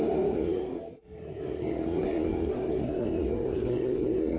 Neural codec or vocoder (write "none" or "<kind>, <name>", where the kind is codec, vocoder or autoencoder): codec, SNAC